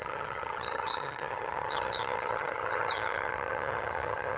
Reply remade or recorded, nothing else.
remade